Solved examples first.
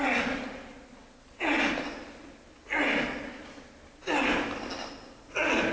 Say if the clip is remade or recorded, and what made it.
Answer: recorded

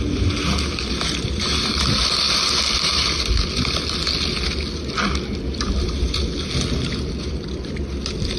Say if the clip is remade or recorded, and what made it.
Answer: recorded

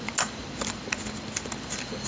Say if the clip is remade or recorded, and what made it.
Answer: recorded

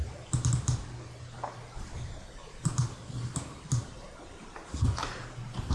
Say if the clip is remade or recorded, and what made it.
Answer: recorded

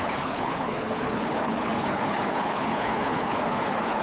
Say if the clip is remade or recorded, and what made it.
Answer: remade, codec, HILCodec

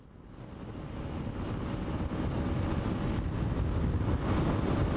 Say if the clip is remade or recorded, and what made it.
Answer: recorded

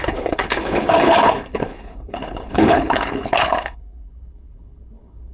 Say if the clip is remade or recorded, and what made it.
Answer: remade, codec, HILCodec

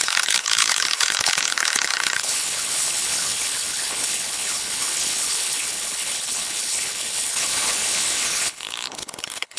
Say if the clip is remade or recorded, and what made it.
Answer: remade, codec, HILCodec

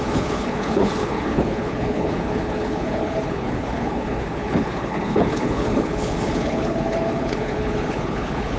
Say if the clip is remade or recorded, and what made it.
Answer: remade, codec, HILCodec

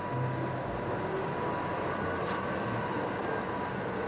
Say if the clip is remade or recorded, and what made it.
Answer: recorded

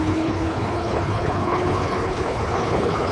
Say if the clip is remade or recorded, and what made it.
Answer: remade, codec, HILCodec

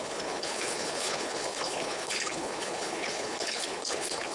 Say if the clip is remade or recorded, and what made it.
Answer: remade, codec, HILCodec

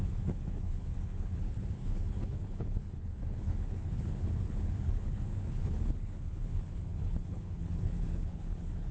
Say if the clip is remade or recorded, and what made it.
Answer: remade, codec, HILCodec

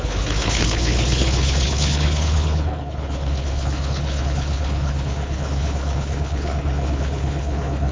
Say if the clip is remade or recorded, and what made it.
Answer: remade, codec, HILCodec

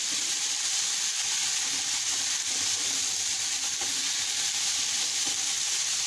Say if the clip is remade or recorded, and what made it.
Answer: recorded